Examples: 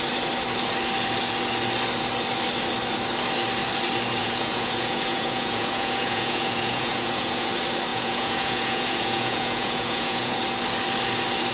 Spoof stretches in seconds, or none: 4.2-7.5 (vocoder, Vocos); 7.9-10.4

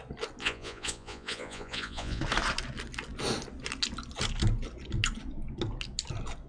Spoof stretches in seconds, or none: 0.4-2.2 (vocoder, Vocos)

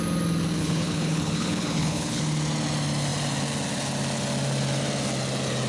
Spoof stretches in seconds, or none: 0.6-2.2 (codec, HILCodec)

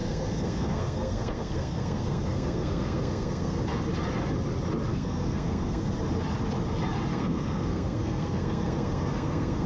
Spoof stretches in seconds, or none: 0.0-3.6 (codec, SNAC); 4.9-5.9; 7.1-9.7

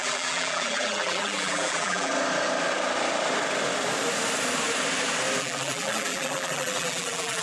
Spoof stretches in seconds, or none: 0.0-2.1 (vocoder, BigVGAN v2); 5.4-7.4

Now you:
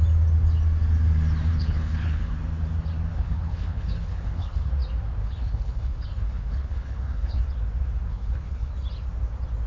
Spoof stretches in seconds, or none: 1.5-2.3 (codec, HILCodec); 3.1-4.7; 5.2-7.4; 8.1-8.7